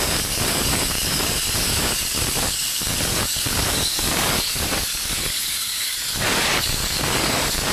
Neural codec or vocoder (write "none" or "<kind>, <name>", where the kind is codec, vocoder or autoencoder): codec, DAC